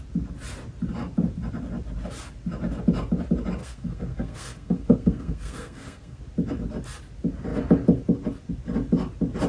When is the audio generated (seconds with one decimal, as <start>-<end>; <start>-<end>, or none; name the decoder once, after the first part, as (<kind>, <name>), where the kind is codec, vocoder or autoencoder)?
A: 3.6-6.2 (codec, SNAC)